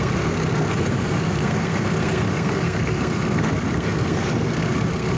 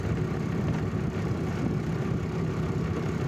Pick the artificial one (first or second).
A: first